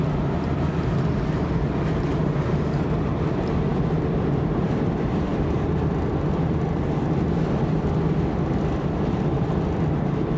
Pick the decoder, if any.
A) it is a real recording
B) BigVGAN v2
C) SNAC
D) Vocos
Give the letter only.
A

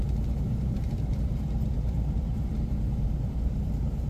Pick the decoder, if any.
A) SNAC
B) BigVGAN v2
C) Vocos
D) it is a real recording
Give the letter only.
B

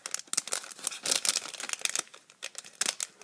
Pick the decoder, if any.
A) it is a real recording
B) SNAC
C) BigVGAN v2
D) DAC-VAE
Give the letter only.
A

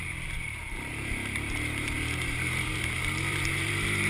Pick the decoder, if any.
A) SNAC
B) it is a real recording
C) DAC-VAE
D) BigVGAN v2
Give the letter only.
D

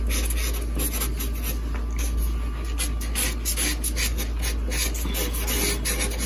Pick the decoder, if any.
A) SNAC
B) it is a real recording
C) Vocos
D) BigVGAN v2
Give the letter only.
B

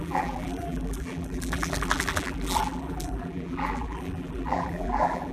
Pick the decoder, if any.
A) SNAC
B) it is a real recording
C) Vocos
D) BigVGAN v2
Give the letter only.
D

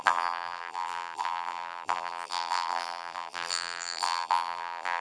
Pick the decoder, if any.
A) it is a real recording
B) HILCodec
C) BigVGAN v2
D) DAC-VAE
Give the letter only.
C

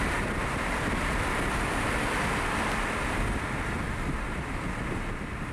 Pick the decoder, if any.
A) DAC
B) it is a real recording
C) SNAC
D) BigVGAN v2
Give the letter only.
B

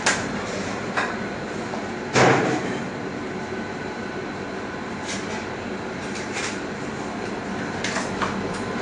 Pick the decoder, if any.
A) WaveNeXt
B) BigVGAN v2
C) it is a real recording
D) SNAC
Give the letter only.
B